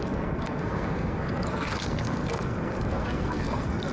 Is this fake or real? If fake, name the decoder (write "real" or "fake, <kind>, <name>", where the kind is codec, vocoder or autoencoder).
fake, codec, SNAC